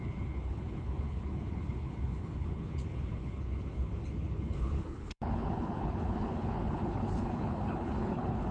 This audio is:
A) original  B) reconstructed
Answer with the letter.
B